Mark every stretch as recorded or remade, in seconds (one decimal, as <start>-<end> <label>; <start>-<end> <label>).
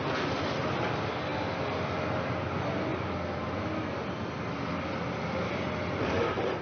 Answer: 0.0-6.6 recorded